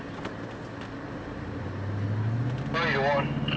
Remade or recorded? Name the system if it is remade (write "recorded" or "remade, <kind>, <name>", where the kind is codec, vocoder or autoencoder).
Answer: recorded